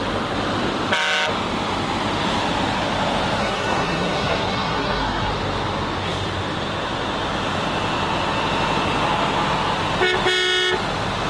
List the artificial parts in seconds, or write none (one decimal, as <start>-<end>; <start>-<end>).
3.4-5.3